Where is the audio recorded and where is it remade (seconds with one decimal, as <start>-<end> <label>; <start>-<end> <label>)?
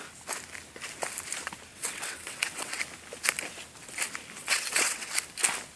0.0-1.7 recorded; 1.7-2.8 remade; 2.8-4.4 recorded; 4.4-5.1 remade; 5.1-5.8 recorded